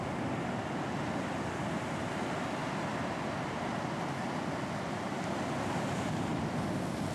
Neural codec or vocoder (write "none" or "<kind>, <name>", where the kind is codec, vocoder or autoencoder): none